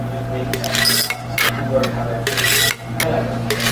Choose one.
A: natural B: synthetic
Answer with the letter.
A